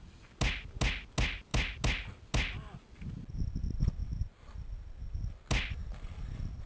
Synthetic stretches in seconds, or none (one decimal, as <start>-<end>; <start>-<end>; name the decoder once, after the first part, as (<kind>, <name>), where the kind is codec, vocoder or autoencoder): none